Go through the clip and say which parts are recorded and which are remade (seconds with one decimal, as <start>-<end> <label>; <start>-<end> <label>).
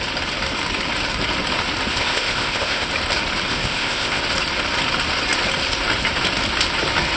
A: 0.0-1.9 recorded; 1.9-2.9 remade; 2.9-3.5 recorded; 3.5-4.2 remade; 4.2-7.2 recorded